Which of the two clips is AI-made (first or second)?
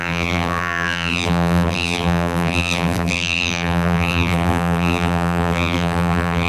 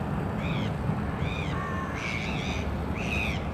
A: first